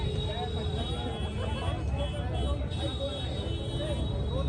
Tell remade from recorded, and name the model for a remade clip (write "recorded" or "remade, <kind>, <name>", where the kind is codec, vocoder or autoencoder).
recorded